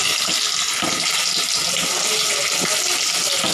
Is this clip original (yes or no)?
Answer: yes